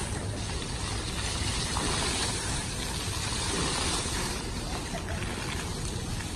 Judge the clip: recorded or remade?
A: recorded